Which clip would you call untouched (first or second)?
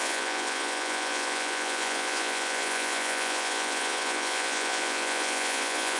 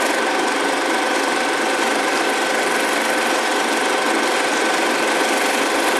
second